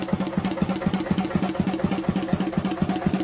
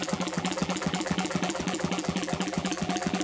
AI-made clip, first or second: second